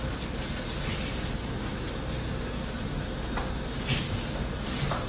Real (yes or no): yes